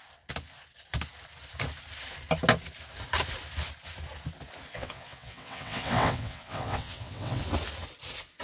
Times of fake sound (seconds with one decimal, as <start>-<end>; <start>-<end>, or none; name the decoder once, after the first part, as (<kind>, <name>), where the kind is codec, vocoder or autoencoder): 4.7-7.4 (vocoder, WaveNeXt)